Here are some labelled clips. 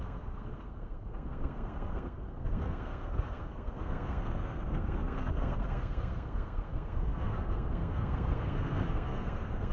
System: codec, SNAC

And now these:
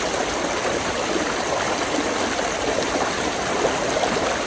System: none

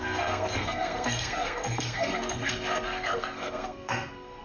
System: codec, SNAC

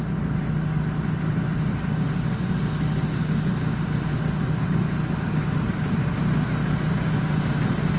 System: none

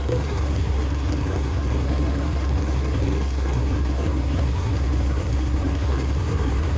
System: codec, SNAC